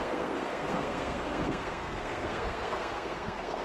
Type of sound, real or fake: fake